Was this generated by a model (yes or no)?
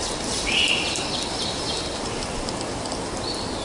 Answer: yes